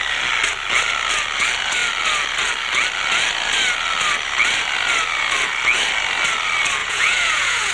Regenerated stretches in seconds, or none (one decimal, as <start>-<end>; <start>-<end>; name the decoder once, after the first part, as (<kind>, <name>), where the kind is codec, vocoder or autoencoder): 6.8-7.7 (vocoder, Vocos)